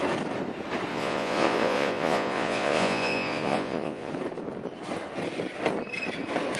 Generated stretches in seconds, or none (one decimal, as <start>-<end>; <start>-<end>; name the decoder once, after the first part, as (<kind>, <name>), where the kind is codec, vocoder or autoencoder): 0.9-4.1 (vocoder, Vocos)